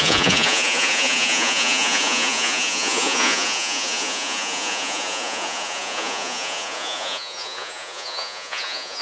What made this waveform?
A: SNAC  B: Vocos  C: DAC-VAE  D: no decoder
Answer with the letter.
B